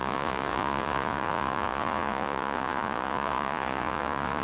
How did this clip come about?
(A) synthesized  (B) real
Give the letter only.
A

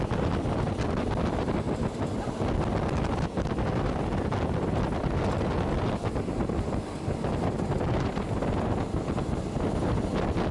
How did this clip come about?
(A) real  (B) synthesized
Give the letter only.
A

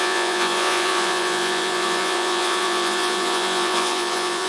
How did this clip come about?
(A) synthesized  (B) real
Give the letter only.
A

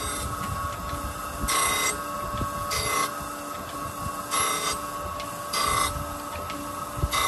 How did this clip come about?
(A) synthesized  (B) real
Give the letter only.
B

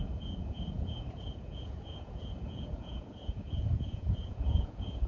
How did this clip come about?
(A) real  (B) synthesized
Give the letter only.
B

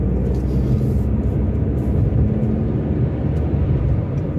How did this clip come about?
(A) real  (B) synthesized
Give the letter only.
A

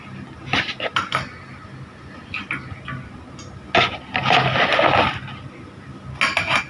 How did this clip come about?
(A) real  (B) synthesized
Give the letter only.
A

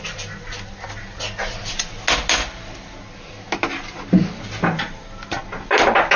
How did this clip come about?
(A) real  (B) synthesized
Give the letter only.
A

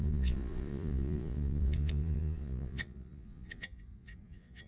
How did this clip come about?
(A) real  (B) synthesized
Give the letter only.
B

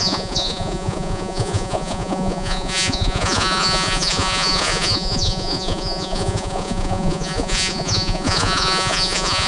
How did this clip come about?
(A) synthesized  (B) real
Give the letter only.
A